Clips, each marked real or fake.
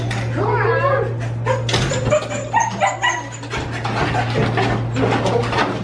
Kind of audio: real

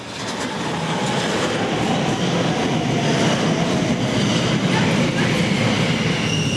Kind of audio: real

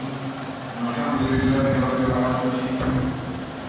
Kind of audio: real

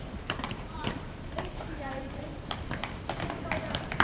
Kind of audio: fake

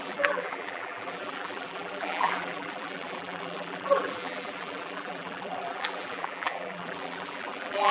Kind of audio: fake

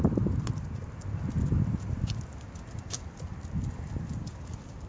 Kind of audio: real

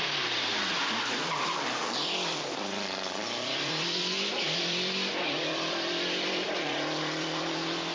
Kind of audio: fake